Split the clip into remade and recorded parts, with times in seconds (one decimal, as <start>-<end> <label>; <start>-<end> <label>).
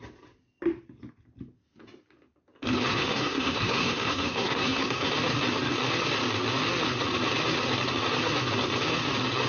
0.0-2.9 recorded; 2.9-5.1 remade; 5.1-9.5 recorded